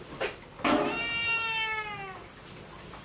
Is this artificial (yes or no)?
no